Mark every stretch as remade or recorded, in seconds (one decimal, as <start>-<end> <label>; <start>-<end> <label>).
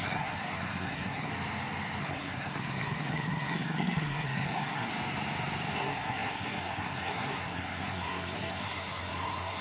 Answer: 0.0-1.3 remade; 1.3-2.0 recorded; 2.0-4.9 remade; 4.9-5.7 recorded; 5.7-9.6 remade